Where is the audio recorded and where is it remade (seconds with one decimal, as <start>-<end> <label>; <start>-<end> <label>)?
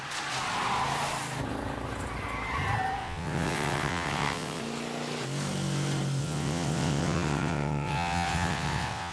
0.0-3.0 recorded; 3.0-4.6 remade; 4.6-6.2 recorded; 6.2-9.1 remade